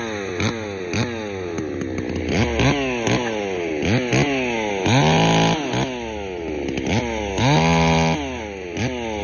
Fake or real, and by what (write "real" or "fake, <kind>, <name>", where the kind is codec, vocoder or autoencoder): real